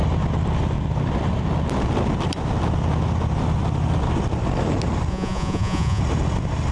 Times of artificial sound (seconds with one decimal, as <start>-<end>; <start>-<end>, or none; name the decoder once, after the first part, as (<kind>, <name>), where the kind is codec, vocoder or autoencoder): 5.1-6.0 (vocoder, Vocos)

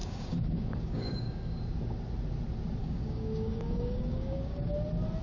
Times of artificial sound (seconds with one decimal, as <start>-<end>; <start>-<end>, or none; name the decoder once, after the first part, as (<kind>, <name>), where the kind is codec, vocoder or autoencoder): 0.0-1.6 (codec, DAC); 2.8-4.7

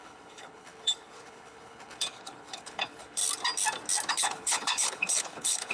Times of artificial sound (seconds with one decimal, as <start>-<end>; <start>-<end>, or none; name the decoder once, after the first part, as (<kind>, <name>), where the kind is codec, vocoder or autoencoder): 0.0-3.2 (codec, HILCodec); 4.1-5.7

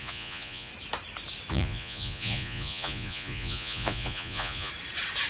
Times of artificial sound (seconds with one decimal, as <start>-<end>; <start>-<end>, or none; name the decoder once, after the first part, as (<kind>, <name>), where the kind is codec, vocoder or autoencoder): 0.0-0.7 (vocoder, Vocos); 1.5-4.7

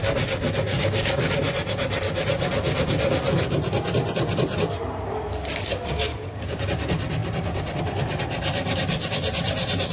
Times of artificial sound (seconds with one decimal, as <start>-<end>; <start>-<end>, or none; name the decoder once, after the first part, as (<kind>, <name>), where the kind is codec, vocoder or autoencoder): 0.7-1.3 (codec, DAC); 6.1-6.6

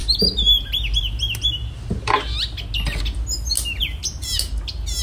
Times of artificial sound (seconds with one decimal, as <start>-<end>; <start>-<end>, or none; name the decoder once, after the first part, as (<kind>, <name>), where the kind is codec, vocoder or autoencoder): none

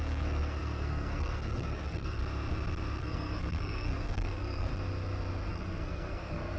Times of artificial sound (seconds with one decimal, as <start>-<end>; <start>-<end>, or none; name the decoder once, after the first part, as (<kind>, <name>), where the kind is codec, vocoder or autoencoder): 0.0-2.2 (codec, SNAC); 3.0-4.7; 5.5-6.6

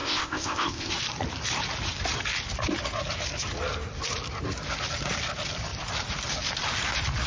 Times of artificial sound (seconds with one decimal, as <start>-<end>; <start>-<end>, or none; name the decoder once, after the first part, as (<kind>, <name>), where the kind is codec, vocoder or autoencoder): 0.0-0.9 (codec, ZipCodec)